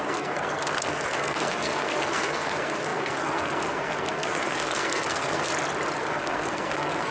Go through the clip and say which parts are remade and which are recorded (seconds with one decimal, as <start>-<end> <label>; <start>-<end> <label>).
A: 0.0-5.5 remade; 5.5-6.0 recorded; 6.0-7.1 remade